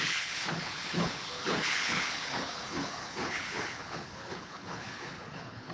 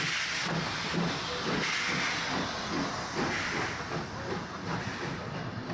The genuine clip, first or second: second